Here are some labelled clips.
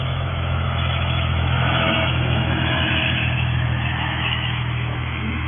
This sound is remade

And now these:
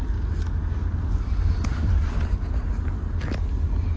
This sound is recorded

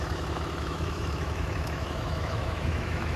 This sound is remade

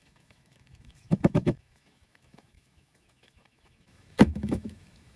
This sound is remade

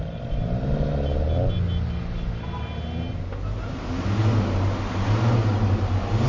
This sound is recorded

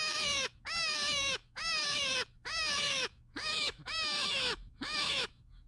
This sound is remade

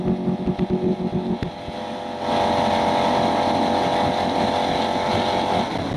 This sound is recorded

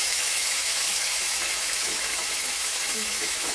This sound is remade